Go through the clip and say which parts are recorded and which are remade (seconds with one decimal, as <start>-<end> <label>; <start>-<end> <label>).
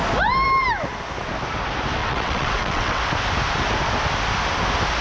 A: 0.0-2.0 recorded; 2.0-3.0 remade; 3.0-5.0 recorded